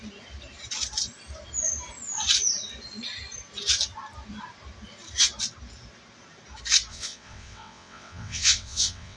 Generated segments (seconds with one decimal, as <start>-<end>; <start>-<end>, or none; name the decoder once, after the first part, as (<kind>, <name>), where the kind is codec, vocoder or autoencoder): 6.9-9.2 (vocoder, WaveNeXt)